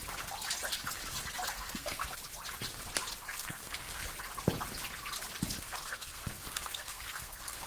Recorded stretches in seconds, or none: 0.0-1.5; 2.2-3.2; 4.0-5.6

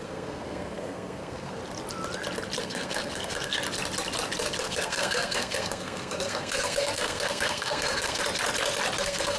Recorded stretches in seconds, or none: 1.6-2.6; 3.5-4.6; 8.2-9.0